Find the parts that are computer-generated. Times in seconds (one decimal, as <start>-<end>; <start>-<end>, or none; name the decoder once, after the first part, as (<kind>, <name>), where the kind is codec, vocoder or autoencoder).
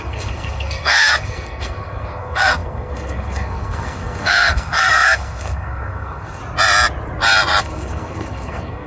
0.0-6.4 (codec, SNAC); 7.6-8.9